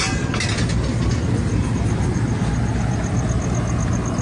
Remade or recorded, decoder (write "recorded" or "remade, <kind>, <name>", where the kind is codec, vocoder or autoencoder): recorded